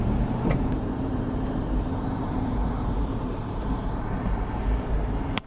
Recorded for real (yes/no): no